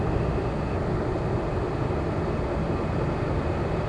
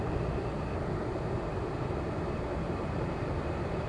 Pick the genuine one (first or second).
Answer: first